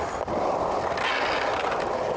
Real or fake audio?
real